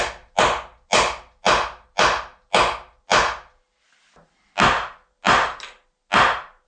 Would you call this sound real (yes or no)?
yes